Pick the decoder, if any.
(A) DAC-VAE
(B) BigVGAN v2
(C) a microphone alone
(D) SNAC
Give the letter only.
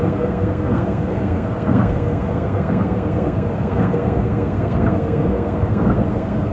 D